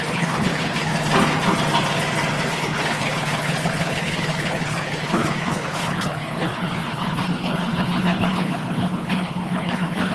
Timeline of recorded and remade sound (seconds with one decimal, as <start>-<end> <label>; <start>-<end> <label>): 0.0-0.9 remade; 0.9-2.5 recorded; 2.5-10.1 remade